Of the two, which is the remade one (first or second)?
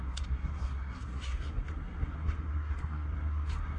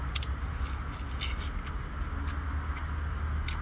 first